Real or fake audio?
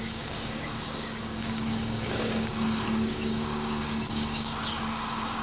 fake